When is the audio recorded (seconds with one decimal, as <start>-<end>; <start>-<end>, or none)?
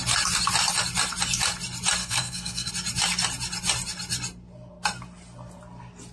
0.0-2.0; 2.7-6.1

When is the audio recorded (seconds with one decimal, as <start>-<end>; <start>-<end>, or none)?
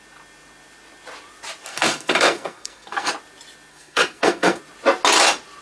0.0-1.7; 3.1-3.7; 4.6-5.6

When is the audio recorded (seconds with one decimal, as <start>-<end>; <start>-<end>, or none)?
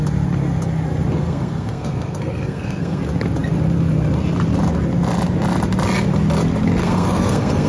0.0-1.1; 3.0-6.8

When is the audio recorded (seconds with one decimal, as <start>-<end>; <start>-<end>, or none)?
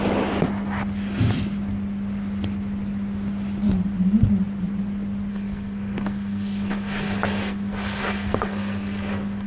0.0-5.3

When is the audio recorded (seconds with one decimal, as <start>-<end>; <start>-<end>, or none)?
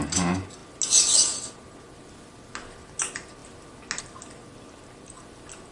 0.0-5.7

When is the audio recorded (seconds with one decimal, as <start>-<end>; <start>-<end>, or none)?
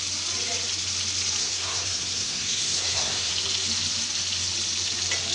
0.0-1.4; 3.3-5.3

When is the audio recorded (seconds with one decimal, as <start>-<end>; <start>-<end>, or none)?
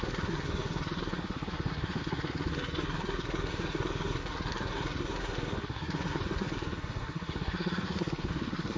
none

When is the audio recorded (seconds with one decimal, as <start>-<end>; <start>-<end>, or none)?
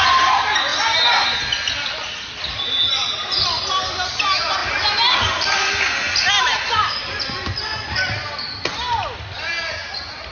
0.0-10.3